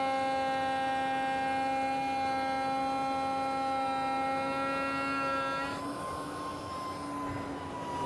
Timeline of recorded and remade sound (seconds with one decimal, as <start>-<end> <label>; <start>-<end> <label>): 0.0-5.7 recorded; 5.7-6.7 remade; 6.7-8.1 recorded